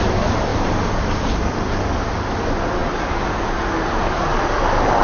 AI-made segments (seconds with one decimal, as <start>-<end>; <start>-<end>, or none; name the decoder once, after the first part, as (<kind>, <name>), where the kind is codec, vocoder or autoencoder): 0.5-1.8 (vocoder, BigVGAN v2); 4.3-5.0